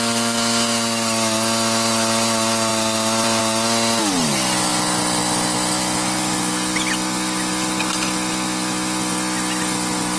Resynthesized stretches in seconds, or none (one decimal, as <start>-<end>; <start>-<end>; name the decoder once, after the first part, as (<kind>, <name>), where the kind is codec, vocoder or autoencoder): 2.7-3.4 (vocoder, BigVGAN v2)